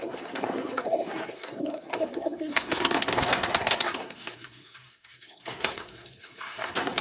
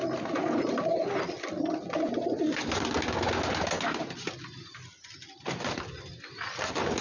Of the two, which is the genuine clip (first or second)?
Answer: second